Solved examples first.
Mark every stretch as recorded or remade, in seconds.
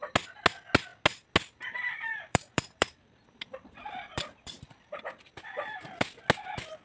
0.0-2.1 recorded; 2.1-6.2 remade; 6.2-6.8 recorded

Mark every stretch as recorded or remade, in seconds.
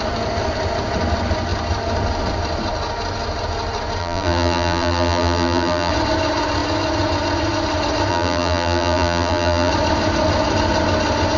0.0-4.0 recorded; 4.0-5.9 remade; 5.9-8.1 recorded; 8.1-9.7 remade; 9.7-11.4 recorded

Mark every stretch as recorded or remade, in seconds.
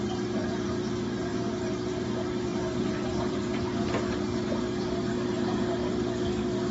0.0-0.4 recorded; 0.4-0.9 remade; 0.9-6.7 recorded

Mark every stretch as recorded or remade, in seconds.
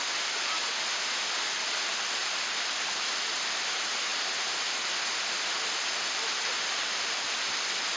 0.0-8.0 recorded